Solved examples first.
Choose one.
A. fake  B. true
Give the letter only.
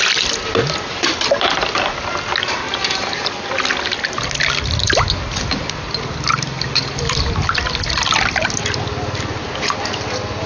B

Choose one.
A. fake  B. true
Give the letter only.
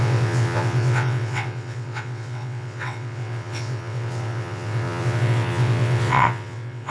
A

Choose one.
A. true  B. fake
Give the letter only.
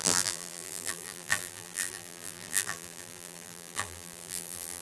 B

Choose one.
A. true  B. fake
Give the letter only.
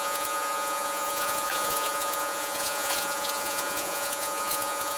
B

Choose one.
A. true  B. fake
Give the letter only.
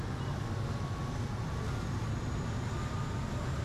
A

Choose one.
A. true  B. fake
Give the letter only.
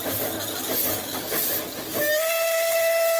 A